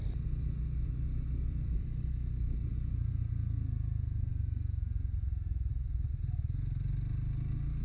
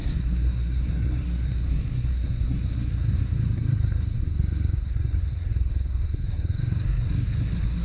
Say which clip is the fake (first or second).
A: second